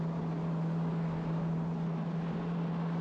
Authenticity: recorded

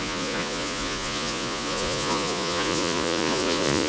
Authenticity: remade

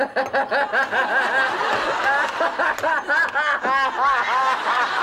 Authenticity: recorded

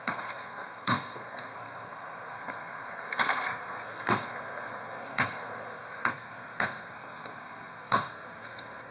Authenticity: remade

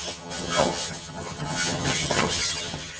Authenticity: remade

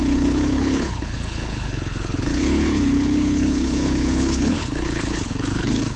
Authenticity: remade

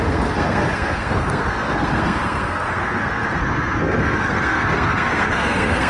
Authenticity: remade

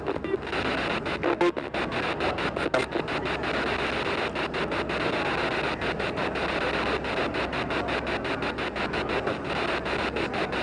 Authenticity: recorded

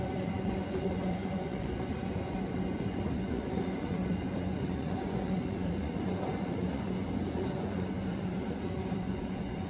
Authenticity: remade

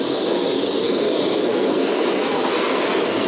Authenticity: remade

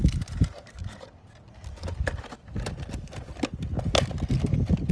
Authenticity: recorded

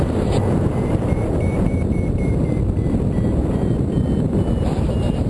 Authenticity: remade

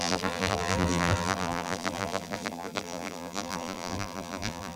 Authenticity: remade